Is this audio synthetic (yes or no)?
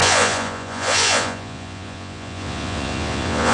yes